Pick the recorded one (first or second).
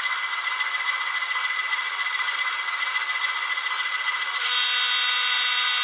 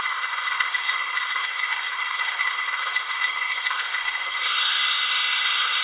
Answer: first